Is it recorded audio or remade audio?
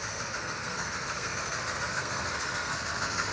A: remade